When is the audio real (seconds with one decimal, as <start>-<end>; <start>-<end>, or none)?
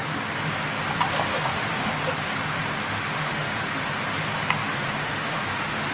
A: 0.0-1.3; 1.9-2.8; 3.6-4.6